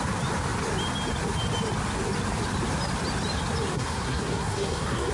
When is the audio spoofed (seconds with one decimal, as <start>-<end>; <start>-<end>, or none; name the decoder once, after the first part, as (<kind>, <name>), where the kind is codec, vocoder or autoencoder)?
3.7-5.1 (codec, SNAC)